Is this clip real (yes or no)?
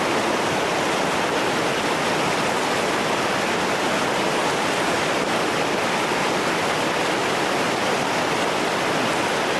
yes